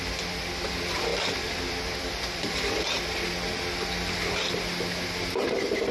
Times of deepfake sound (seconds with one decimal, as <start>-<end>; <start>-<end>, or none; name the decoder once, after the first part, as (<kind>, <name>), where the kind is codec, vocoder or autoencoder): 1.1-3.6 (vocoder, BigVGAN v2)